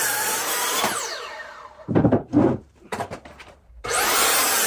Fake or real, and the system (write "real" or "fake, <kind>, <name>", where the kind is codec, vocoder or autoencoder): fake, vocoder, BigVGAN v2